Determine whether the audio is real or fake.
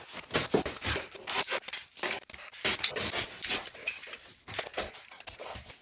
real